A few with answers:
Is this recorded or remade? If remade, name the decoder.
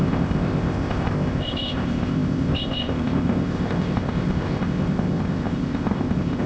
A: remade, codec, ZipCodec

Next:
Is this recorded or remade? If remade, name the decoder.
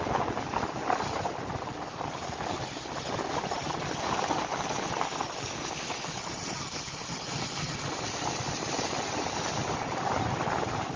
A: recorded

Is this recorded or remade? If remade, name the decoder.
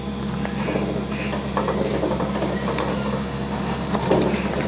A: recorded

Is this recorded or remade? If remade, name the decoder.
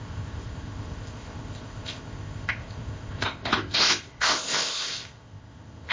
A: remade, codec, ZipCodec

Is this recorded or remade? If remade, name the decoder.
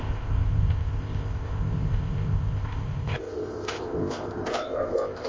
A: remade, codec, ZipCodec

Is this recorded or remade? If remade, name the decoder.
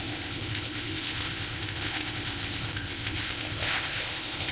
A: remade, codec, ZipCodec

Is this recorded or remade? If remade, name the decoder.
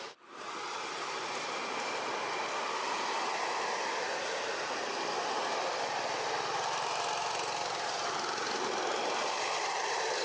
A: recorded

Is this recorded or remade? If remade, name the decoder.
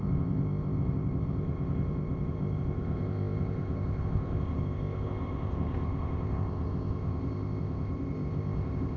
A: remade, codec, ZipCodec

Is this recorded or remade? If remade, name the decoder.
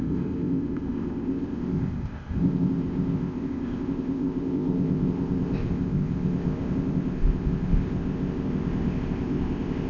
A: remade, codec, ZipCodec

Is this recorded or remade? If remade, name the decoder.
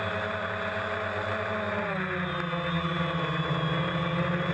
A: recorded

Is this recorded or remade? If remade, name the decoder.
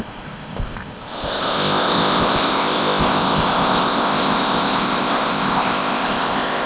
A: remade, codec, ZipCodec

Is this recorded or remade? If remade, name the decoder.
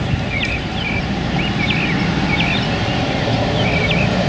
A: recorded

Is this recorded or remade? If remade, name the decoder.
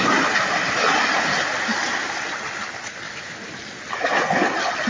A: recorded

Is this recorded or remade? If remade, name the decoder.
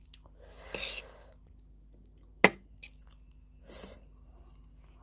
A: recorded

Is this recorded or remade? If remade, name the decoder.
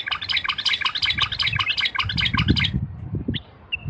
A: recorded